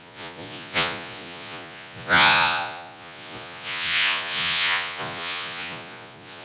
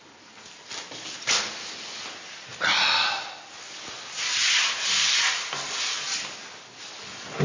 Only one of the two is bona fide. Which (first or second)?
second